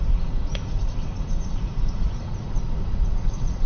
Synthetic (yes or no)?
yes